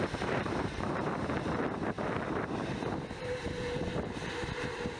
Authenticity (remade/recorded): remade